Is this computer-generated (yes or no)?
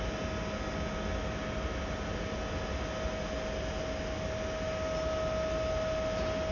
no